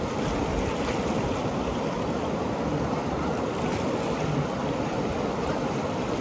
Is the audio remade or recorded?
recorded